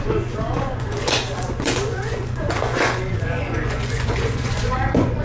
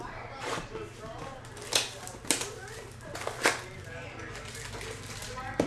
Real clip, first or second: second